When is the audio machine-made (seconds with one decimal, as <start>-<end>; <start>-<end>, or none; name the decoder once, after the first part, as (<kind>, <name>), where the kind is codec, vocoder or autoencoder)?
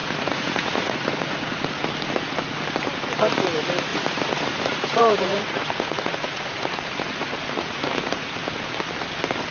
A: 0.0-1.8 (vocoder, Vocos); 3.9-8.3